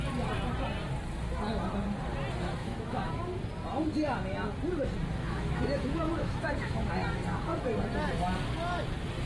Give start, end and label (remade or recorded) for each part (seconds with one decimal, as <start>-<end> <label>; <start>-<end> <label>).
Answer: 0.0-2.6 recorded; 2.6-3.2 remade; 3.2-5.2 recorded; 5.2-6.9 remade; 6.9-9.3 recorded